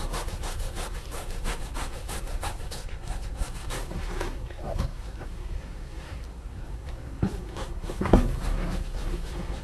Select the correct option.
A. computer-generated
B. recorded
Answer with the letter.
A